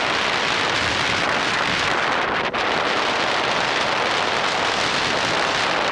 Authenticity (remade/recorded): recorded